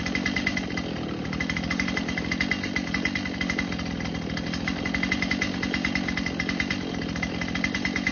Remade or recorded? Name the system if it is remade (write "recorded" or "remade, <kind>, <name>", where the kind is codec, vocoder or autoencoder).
recorded